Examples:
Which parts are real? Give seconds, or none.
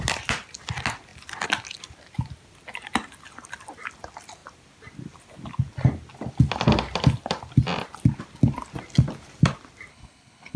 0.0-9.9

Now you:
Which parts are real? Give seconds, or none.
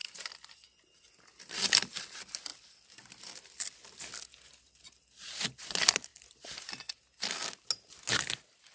2.0-2.5; 4.0-6.1; 6.9-8.7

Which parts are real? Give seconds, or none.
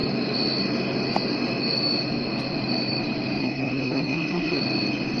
0.0-3.4; 4.6-5.2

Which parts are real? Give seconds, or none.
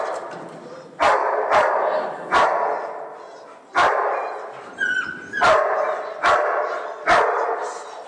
0.0-8.1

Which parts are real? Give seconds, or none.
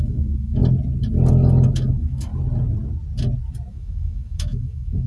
0.6-1.3; 2.3-3.7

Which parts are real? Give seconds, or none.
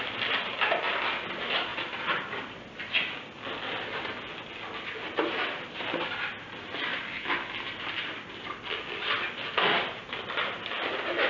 0.0-11.3